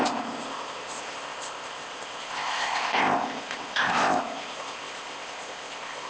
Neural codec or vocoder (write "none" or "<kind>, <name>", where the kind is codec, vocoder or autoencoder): codec, ZipCodec